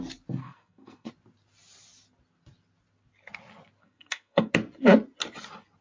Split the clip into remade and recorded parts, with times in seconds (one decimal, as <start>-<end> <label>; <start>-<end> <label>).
0.0-0.4 recorded; 0.4-1.1 remade; 1.1-3.8 recorded; 3.8-4.5 remade; 4.5-5.8 recorded